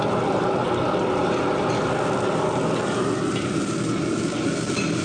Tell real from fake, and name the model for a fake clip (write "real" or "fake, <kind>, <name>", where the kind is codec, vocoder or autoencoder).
real